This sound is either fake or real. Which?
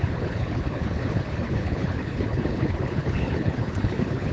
fake